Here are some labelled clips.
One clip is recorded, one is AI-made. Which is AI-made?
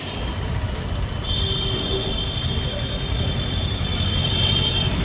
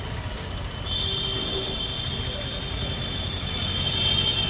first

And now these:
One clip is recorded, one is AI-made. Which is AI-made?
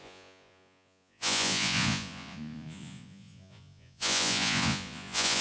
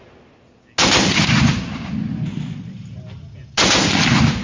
first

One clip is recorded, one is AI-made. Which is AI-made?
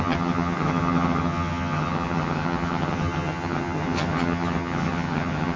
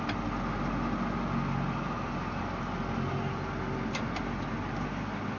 first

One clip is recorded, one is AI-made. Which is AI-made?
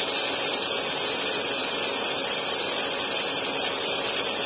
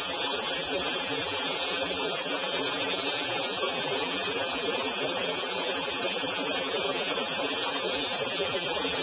second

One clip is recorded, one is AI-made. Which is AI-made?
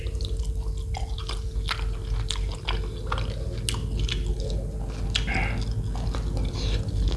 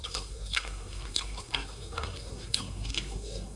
second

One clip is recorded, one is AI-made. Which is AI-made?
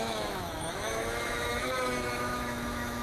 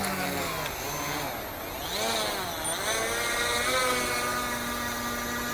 first